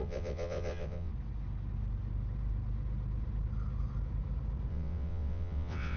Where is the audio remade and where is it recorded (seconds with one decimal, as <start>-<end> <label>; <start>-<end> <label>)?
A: 0.0-1.1 remade; 1.1-4.7 recorded; 4.7-6.0 remade